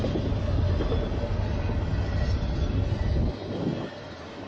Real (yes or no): yes